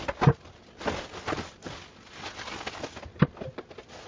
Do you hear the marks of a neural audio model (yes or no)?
no